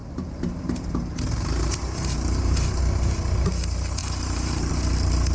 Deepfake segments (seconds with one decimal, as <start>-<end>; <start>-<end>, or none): 0.0-2.8; 4.0-4.7